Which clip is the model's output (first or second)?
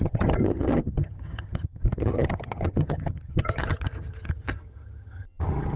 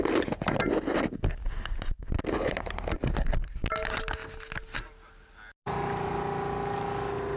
first